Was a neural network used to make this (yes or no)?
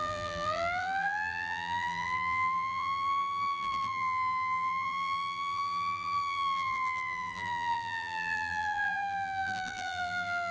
yes